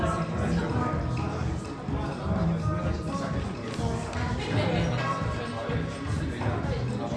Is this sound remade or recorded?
recorded